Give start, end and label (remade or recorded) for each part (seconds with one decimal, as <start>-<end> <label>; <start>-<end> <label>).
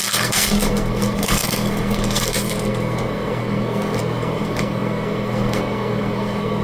0.0-6.6 remade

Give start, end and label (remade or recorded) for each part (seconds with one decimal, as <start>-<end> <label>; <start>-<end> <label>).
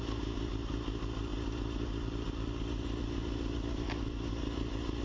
0.0-5.0 recorded